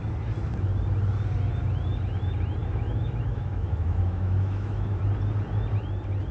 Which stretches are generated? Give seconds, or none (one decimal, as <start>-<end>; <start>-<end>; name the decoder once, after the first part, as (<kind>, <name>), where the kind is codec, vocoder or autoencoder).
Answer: 2.6-5.0 (autoencoder, DAC-VAE)